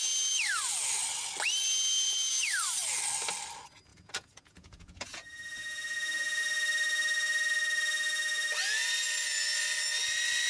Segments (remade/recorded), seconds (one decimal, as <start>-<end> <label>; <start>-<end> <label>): 0.0-3.9 recorded; 3.9-6.4 remade; 6.4-10.5 recorded